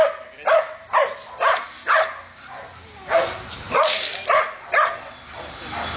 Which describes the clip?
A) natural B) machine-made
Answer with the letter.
A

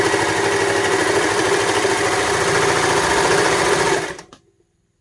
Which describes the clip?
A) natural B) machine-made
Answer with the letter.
B